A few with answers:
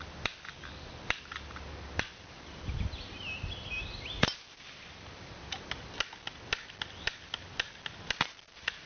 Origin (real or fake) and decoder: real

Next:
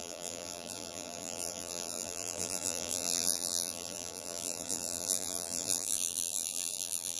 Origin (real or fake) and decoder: fake, vocoder, BigVGAN v2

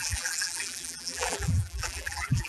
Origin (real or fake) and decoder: fake, vocoder, BigVGAN v2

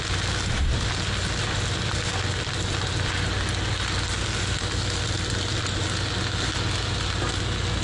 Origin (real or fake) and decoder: real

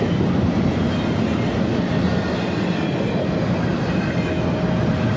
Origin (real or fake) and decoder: real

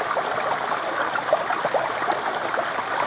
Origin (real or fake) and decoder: real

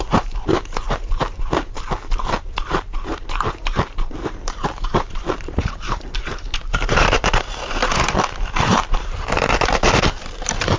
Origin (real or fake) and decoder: fake, vocoder, BigVGAN v2